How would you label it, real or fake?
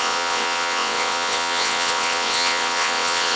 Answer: fake